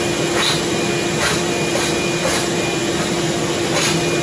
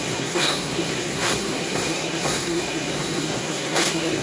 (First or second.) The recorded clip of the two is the first